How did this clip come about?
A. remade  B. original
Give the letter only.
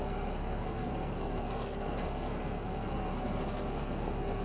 A